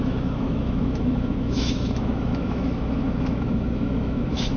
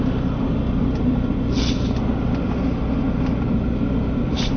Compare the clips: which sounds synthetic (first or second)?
first